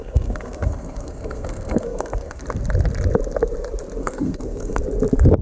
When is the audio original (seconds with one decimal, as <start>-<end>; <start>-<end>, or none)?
2.4-4.0; 4.8-5.4